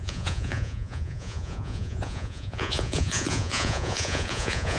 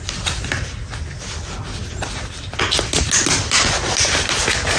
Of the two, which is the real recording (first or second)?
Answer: second